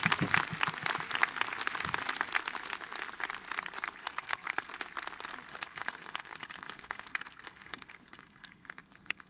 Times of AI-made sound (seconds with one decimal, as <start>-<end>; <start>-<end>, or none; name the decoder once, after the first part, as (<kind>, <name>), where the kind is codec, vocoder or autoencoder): 4.0-4.7 (codec, SNAC); 5.5-9.3